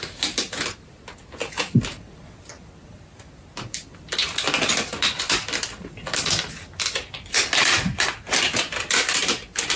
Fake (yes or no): no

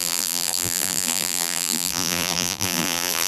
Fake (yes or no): yes